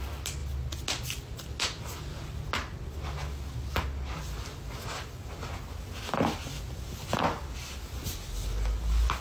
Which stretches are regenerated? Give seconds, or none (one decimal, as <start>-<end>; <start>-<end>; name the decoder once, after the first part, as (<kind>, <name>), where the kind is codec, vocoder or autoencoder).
none